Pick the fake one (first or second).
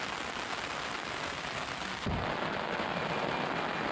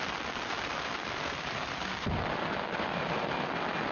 second